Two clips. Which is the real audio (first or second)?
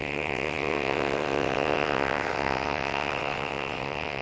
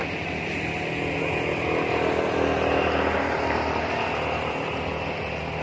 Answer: second